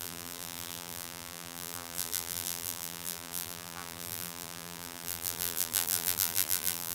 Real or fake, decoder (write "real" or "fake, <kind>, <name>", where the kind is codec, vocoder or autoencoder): fake, vocoder, BigVGAN v2